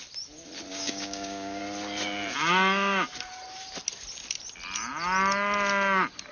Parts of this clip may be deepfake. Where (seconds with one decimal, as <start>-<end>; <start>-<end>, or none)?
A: 0.7-1.6